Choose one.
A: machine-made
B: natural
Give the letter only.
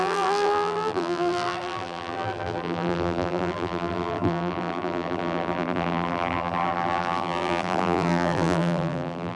A